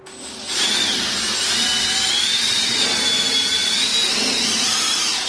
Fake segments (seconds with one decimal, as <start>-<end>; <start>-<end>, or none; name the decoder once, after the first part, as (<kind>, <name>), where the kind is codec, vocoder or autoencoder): 2.3-3.0 (vocoder, WaveNeXt)